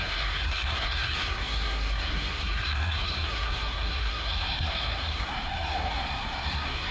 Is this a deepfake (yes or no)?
yes